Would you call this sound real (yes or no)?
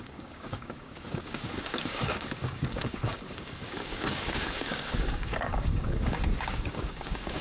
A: no